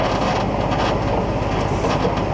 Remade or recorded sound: recorded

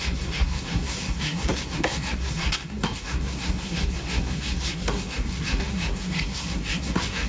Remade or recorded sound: remade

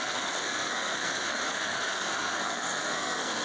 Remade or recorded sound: remade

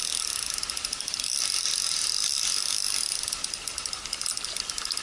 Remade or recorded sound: recorded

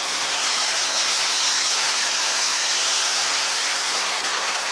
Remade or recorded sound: remade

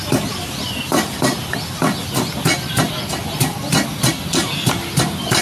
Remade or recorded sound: recorded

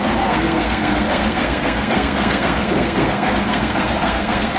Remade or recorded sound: remade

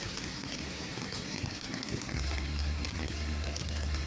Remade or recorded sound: remade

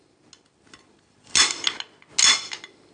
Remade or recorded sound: recorded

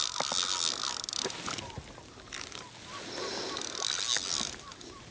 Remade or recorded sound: recorded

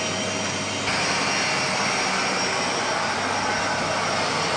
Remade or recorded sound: recorded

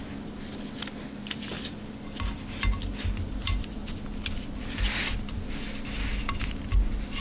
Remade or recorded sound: recorded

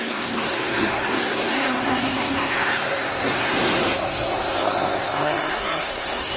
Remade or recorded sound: remade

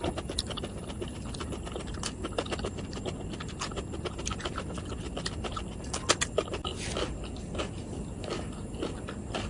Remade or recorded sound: recorded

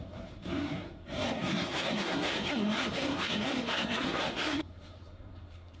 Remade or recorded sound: remade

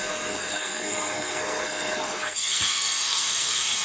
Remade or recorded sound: remade